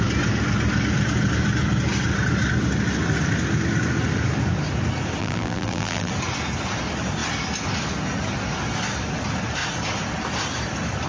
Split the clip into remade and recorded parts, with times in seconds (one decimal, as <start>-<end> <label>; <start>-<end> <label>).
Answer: 0.0-5.2 recorded; 5.2-6.1 remade; 6.1-11.1 recorded